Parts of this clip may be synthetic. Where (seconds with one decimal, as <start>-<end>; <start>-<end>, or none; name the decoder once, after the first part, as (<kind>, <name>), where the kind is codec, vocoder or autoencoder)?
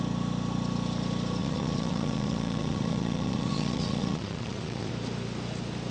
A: 1.4-4.9 (vocoder, Vocos)